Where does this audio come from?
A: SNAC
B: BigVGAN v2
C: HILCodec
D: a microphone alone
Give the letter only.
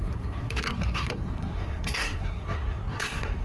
A